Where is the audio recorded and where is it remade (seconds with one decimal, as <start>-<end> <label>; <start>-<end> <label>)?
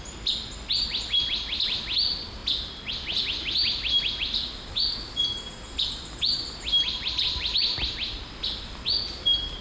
0.0-9.6 recorded